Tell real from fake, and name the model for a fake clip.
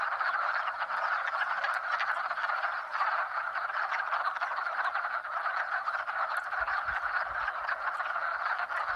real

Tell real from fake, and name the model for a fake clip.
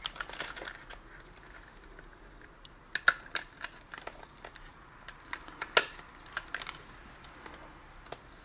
real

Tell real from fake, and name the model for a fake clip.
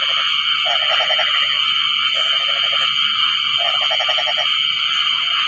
real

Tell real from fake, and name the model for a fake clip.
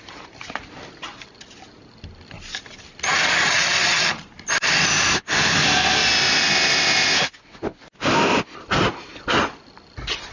real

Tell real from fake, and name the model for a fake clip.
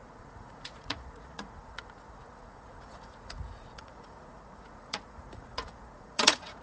fake, vocoder, Vocos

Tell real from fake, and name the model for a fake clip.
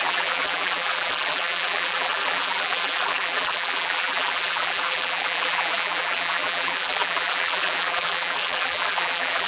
fake, vocoder, BigVGAN v2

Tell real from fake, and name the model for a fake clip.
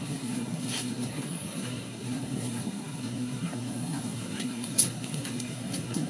fake, codec, SNAC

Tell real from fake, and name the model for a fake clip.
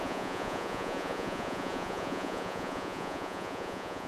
fake, vocoder, Vocos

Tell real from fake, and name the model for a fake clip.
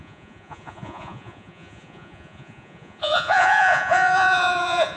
fake, vocoder, Vocos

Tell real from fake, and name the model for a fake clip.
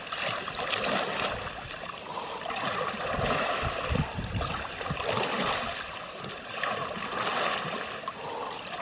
real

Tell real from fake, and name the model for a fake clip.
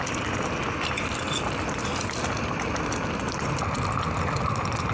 real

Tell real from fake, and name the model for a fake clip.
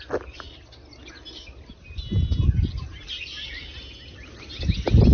real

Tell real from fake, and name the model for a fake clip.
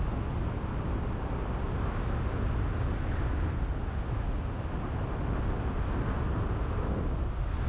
real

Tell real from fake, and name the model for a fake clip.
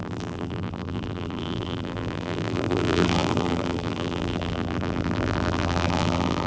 fake, vocoder, BigVGAN v2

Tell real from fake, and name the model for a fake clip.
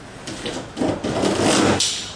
real